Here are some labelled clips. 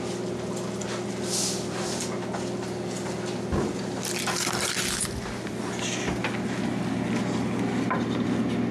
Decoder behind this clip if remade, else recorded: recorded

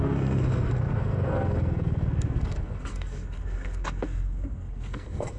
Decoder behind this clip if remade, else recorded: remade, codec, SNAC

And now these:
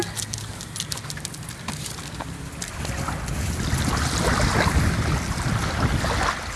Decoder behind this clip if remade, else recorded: recorded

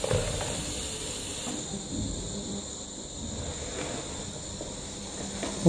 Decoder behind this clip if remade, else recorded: recorded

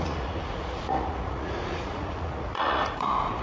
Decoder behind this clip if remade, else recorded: remade, vocoder, Vocos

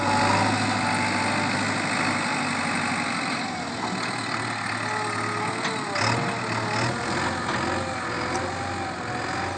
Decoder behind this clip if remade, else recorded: recorded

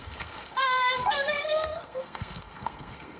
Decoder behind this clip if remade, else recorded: remade, codec, SNAC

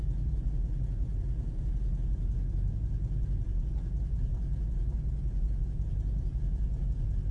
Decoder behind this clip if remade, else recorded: remade, vocoder, Vocos